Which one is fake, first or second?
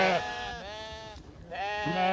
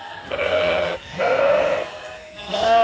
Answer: second